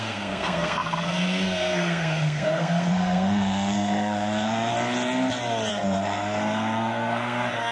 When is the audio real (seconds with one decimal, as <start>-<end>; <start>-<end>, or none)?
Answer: 4.7-5.7